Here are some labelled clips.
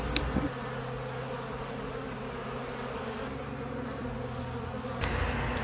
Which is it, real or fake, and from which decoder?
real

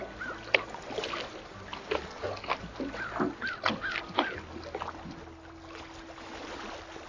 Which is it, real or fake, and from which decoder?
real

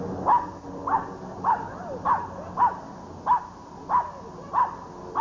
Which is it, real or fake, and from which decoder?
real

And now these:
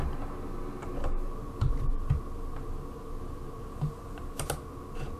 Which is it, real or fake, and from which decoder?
real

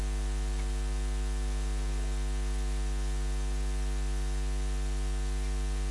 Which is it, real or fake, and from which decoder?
real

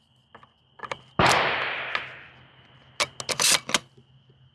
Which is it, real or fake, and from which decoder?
real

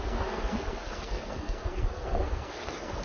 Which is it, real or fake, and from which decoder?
fake, codec, SNAC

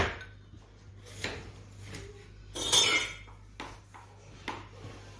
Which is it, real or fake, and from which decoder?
real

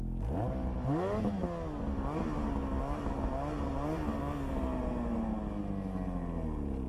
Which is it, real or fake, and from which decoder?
real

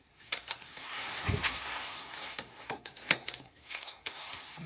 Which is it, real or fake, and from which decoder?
fake, codec, SNAC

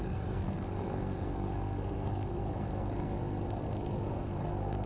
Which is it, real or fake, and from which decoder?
fake, codec, SNAC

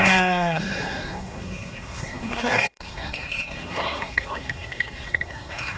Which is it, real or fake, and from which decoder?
fake, codec, SNAC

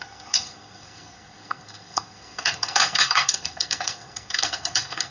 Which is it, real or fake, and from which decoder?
fake, codec, SNAC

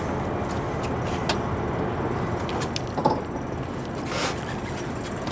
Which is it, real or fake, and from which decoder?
real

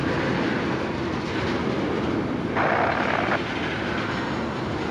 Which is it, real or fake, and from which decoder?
real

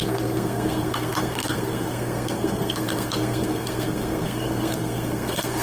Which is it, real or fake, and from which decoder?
fake, codec, SNAC